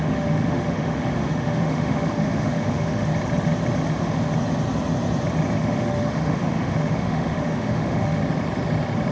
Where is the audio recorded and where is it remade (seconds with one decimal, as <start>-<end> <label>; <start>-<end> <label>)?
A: 0.0-3.1 remade; 3.1-3.9 recorded; 3.9-4.3 remade; 4.3-5.6 recorded; 5.6-8.2 remade; 8.2-9.1 recorded